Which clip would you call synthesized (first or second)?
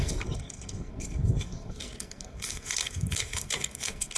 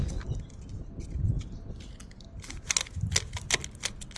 first